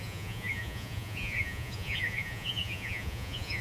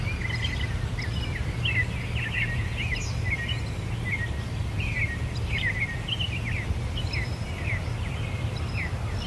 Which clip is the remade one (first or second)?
first